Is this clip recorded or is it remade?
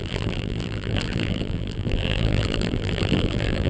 remade